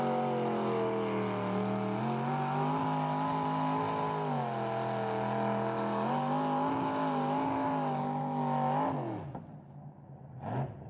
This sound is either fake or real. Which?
real